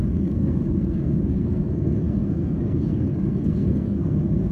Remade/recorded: remade